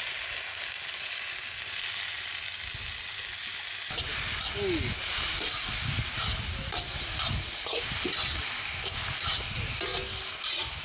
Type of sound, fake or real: real